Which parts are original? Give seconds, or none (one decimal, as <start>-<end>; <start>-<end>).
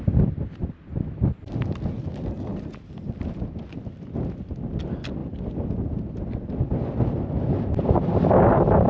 0.0-8.9